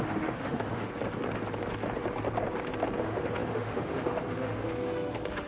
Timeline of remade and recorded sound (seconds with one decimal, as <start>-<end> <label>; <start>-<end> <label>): 0.0-0.9 remade; 0.9-3.0 recorded; 3.0-5.5 remade